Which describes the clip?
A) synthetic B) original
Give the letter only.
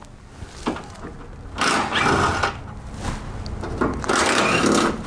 B